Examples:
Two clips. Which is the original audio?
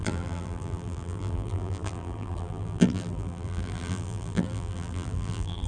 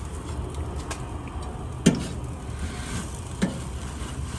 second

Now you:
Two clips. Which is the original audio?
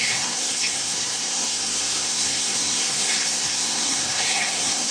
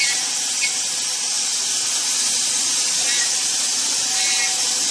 second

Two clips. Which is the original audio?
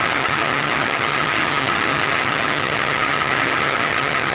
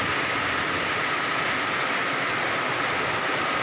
second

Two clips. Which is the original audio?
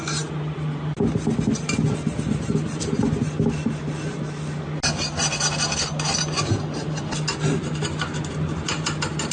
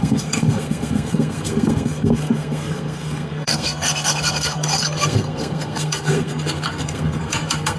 first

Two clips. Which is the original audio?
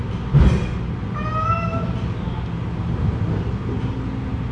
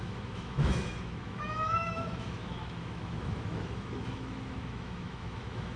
first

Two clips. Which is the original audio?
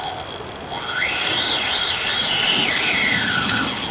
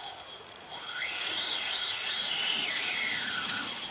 first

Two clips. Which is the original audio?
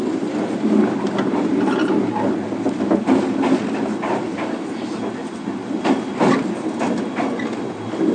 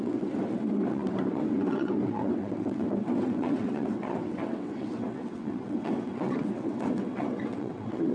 first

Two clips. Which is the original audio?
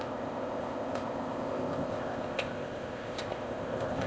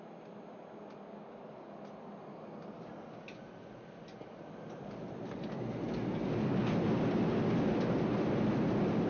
second